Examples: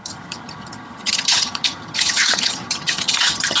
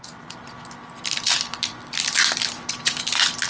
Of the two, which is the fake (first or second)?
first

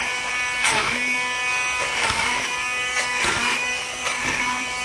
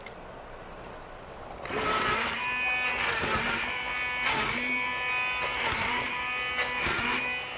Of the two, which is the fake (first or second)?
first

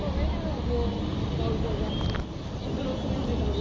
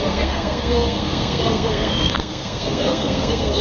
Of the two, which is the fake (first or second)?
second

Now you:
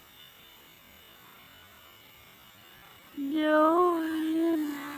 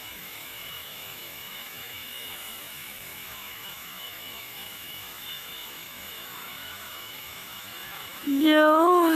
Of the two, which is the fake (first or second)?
second